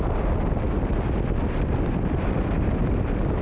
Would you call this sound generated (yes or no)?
yes